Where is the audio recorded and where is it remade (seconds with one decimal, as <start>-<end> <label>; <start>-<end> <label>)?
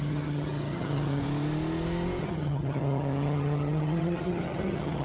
0.0-1.2 remade; 1.2-2.2 recorded; 2.2-5.0 remade